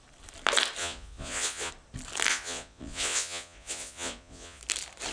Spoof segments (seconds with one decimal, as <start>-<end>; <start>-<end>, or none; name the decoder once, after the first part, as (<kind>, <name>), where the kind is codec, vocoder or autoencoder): 0.8-1.7 (vocoder, Vocos); 2.3-4.6